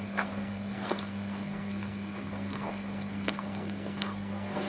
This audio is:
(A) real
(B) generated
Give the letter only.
B